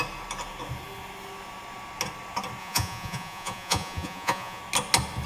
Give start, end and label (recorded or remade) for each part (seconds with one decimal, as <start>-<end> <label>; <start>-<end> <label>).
0.0-2.6 recorded; 2.6-4.6 remade; 4.6-5.3 recorded